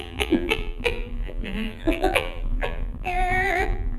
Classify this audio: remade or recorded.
remade